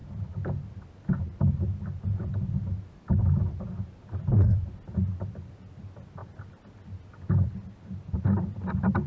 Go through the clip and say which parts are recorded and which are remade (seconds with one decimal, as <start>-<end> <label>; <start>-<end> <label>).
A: 0.0-9.1 recorded